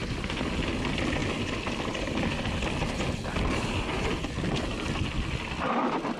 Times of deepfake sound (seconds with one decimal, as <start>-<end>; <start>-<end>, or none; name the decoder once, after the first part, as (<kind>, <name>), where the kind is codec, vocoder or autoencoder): 0.0-0.5 (vocoder, BigVGAN v2); 1.2-4.9